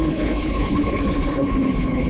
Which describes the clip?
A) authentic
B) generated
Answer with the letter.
B